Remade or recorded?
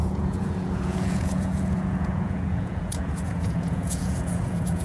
remade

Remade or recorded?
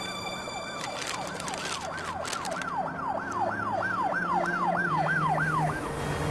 recorded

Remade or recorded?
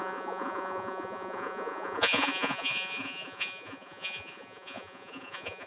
remade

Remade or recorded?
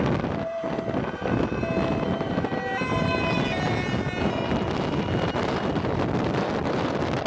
recorded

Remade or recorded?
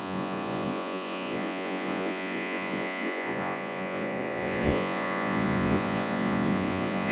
remade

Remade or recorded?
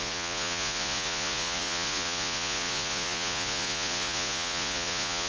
remade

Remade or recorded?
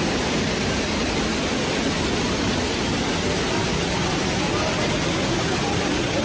recorded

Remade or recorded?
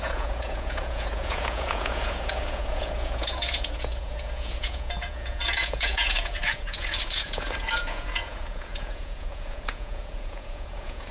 remade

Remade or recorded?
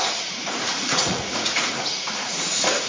remade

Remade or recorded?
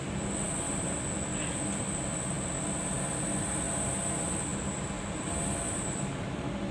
recorded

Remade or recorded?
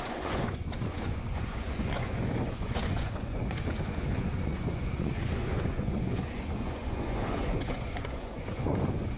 remade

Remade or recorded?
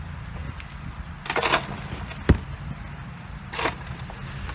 recorded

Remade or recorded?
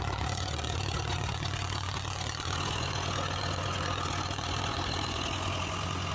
remade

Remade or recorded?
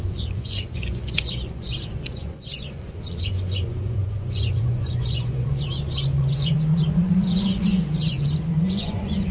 remade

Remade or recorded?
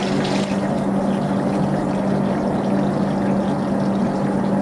recorded